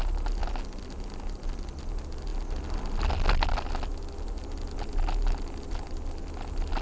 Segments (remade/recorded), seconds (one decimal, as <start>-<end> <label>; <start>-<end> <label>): 0.0-6.8 recorded